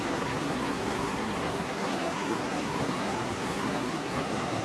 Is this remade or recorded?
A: remade